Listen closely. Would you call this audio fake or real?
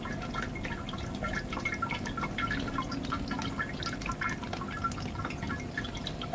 real